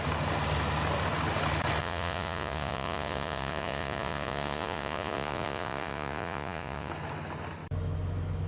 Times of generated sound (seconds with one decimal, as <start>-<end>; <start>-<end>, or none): 1.8-6.9